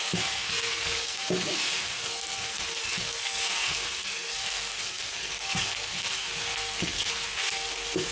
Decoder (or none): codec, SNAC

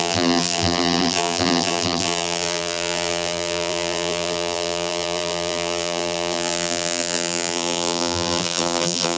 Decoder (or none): vocoder, BigVGAN v2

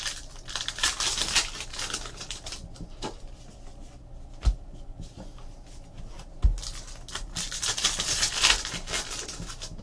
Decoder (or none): none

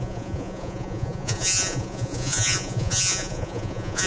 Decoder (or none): vocoder, Vocos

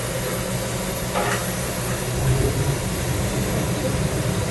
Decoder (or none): none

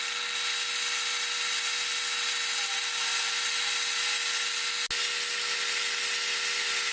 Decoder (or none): none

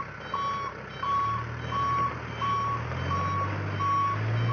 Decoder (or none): none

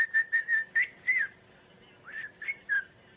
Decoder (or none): none